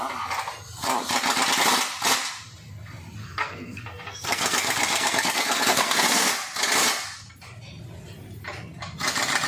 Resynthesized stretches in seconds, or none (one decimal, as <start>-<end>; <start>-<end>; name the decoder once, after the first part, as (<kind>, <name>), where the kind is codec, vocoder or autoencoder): 3.2-6.3 (codec, SNAC)